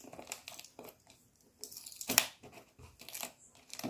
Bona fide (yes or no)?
yes